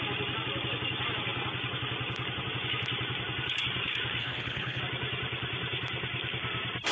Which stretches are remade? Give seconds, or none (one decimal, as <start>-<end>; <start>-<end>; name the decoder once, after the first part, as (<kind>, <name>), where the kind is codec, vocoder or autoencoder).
4.2-4.8 (codec, HILCodec)